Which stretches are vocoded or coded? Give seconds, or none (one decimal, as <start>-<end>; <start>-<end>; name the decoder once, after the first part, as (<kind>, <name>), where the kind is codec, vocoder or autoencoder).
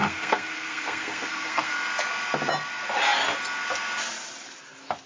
0.0-1.7 (codec, SNAC)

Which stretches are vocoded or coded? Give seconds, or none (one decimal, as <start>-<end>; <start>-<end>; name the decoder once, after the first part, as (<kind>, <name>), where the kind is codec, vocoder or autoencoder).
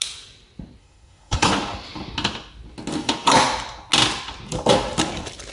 0.8-1.5 (codec, SNAC)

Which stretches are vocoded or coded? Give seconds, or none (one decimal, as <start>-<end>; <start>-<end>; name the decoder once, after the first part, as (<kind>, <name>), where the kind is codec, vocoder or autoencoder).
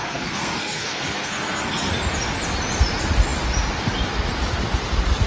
0.0-1.9 (codec, SNAC)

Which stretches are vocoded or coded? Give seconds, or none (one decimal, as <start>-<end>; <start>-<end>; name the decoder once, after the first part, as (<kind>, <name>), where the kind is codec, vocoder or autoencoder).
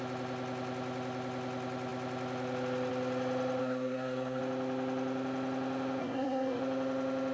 3.6-4.4 (codec, SNAC); 6.0-6.6